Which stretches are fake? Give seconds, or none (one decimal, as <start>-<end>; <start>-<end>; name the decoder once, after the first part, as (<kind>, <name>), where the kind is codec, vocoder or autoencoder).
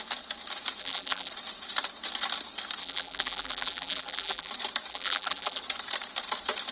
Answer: 0.8-1.3 (vocoder, BigVGAN v2); 2.8-4.5; 4.9-5.6